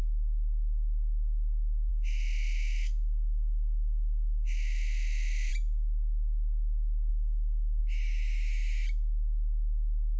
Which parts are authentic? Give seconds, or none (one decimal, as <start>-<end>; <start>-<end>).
0.0-1.9; 5.5-7.1; 7.8-10.2